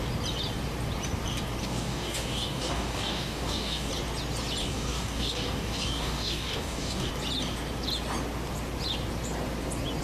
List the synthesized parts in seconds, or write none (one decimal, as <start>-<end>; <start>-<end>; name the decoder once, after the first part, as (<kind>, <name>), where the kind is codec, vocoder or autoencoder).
1.6-3.9 (codec, DAC); 4.6-7.1

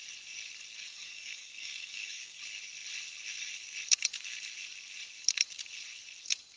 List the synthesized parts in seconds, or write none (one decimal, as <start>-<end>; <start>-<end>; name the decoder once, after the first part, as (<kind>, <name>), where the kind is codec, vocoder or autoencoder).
0.8-2.4 (codec, DAC)

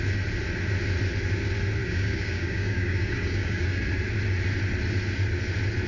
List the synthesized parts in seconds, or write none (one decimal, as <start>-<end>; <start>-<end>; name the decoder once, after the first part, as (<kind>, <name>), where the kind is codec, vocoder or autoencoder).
1.8-3.8 (codec, DAC)

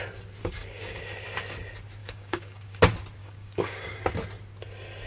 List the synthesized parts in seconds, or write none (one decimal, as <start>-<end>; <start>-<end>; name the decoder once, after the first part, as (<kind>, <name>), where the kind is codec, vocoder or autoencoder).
0.4-1.0 (codec, DAC); 2.0-2.8; 3.2-4.0

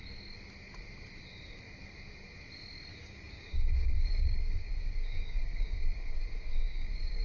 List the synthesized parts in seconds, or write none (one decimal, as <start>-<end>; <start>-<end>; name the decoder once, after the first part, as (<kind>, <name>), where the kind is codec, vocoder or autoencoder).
2.9-7.2 (codec, DAC)

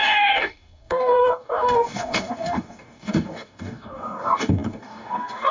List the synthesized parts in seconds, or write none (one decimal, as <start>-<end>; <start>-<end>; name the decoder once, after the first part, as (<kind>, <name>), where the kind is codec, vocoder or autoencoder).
0.0-5.5 (codec, DAC)

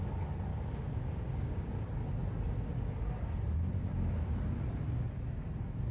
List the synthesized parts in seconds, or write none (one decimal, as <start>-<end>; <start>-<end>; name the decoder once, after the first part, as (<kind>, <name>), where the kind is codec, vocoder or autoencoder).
0.5-1.7 (codec, DAC)

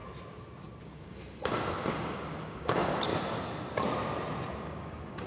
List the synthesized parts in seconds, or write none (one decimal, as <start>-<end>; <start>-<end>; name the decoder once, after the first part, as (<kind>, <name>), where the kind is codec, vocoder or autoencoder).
0.8-3.1 (codec, DAC); 4.6-5.3